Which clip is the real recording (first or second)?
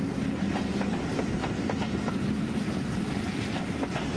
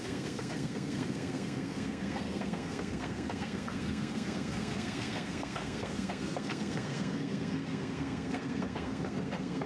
first